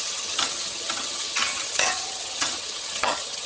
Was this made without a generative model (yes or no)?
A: no